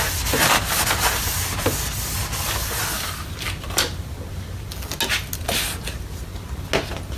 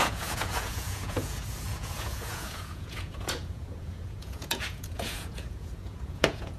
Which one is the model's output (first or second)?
second